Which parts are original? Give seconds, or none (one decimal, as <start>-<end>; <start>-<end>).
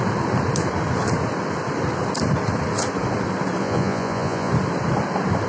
0.0-3.6; 4.5-5.5